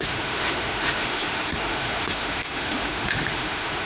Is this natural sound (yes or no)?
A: no